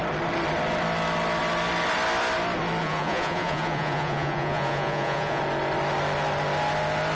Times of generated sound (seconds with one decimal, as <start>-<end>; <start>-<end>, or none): 2.8-5.4